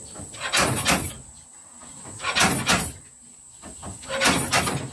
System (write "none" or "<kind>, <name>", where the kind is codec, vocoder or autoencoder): none